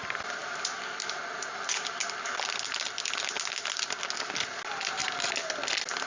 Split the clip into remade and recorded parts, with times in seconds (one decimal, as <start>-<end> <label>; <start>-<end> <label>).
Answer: 0.0-6.1 recorded